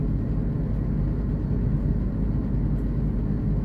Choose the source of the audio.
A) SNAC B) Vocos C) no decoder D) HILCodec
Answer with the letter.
C